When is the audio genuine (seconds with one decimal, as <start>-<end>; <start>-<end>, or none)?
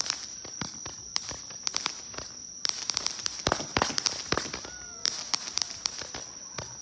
0.0-6.8